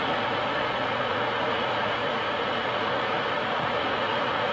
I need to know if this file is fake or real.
fake